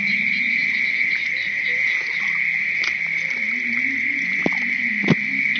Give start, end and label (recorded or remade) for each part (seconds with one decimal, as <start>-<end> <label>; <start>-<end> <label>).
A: 0.0-5.6 recorded